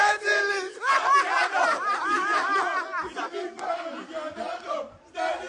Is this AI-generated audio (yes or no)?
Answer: no